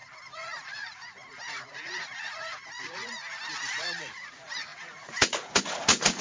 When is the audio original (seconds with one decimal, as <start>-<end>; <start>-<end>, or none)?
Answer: 3.2-3.8